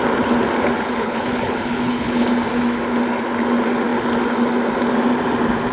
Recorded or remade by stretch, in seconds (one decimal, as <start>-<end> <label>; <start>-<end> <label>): 0.0-1.0 recorded; 1.0-2.3 remade; 2.3-5.7 recorded